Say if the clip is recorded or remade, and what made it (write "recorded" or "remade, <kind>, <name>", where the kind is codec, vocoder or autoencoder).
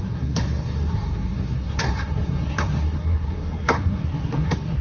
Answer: remade, codec, SNAC